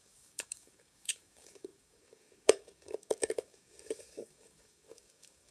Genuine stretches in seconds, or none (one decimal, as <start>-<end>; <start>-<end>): none